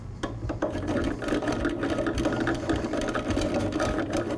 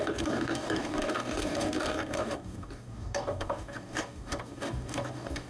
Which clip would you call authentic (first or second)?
first